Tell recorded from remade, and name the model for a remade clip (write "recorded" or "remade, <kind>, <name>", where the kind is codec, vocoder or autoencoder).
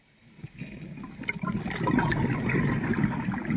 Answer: recorded